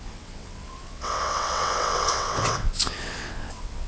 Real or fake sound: fake